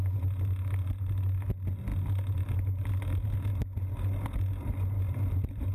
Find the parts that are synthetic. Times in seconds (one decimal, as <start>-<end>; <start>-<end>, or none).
none